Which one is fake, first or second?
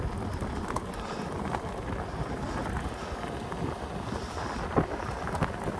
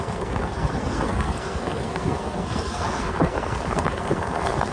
second